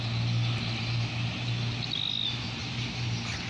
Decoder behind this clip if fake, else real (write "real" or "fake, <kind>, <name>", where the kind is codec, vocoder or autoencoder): real